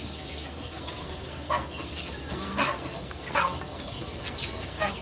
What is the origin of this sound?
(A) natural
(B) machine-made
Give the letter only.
B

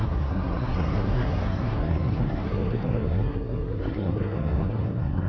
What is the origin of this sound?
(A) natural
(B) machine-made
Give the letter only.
B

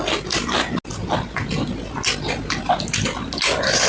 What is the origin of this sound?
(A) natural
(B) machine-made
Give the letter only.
A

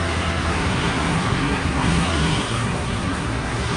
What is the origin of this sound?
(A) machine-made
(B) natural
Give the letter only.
A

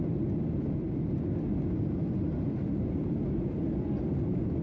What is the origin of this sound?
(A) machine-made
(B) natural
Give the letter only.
B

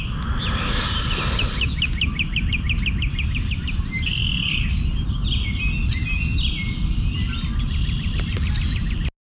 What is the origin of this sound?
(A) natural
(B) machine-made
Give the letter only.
A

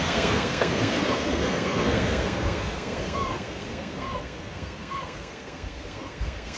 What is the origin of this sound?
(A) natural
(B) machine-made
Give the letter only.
B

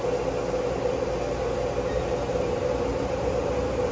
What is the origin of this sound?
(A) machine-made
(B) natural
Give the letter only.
B